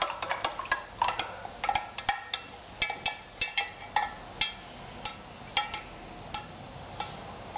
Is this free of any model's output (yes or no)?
yes